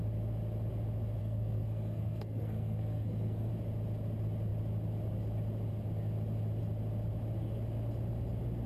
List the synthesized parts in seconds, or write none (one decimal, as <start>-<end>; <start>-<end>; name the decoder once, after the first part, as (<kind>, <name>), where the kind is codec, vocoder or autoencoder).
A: 1.2-3.5 (codec, SNAC)